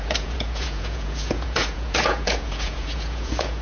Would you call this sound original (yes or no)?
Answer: no